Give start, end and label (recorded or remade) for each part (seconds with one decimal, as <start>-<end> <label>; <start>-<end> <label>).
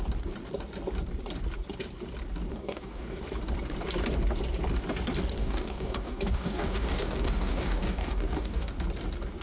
0.0-2.5 recorded; 2.5-3.2 remade; 3.2-5.4 recorded; 5.4-8.7 remade; 8.7-9.4 recorded